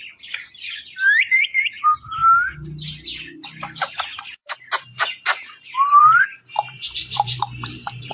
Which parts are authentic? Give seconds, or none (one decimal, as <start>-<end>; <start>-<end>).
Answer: 2.2-4.2